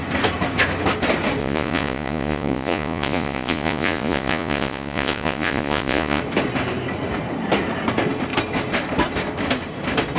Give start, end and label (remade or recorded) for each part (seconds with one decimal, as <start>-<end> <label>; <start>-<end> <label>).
0.0-1.4 recorded; 1.4-6.2 remade; 6.2-10.2 recorded